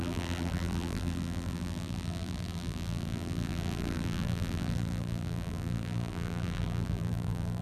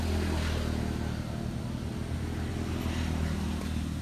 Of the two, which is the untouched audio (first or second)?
second